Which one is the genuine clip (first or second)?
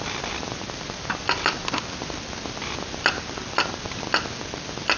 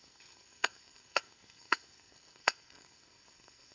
first